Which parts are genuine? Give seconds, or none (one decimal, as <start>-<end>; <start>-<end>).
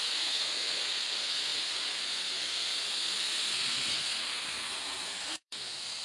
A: none